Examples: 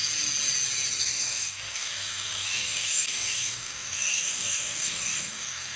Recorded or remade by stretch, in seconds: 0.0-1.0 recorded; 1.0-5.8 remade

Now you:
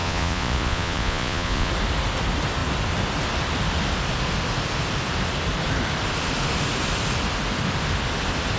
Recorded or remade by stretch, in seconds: 0.0-1.7 remade; 1.7-8.6 recorded

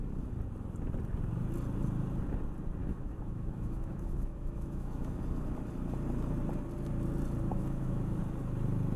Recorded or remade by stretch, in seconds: 0.0-2.8 recorded; 2.8-5.2 remade; 5.2-7.5 recorded; 7.5-8.2 remade; 8.2-9.0 recorded

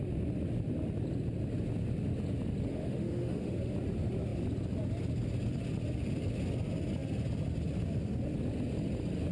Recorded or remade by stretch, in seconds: 0.0-2.7 recorded; 2.7-3.7 remade; 3.7-9.3 recorded

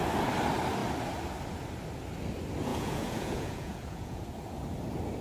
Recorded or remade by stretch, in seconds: 0.0-2.7 recorded; 2.7-4.2 remade; 4.2-5.2 recorded

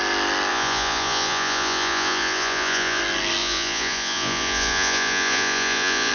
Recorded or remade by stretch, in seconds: 0.0-0.5 recorded; 0.5-3.0 remade; 3.0-3.4 recorded; 3.4-6.1 remade

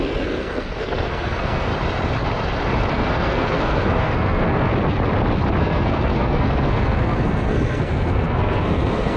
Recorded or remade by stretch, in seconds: 0.0-1.7 remade; 1.7-2.9 recorded; 2.9-4.7 remade; 4.7-5.6 recorded; 5.6-9.2 remade